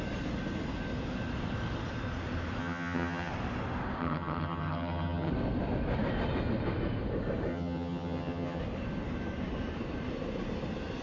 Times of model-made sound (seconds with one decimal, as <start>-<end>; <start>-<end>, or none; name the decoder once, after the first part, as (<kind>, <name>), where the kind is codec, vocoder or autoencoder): 2.6-3.3 (vocoder, HiFi-GAN); 4.0-5.3; 7.5-8.6